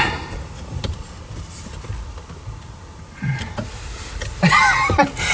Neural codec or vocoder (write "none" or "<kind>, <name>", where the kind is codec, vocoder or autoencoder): none